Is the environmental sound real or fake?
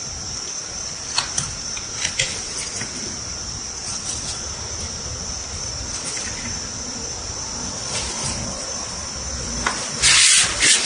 real